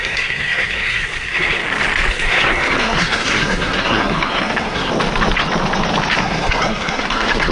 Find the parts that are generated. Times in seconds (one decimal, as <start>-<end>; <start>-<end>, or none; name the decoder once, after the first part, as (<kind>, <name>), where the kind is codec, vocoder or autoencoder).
0.0-1.6 (codec, SNAC); 2.1-4.9; 6.2-7.5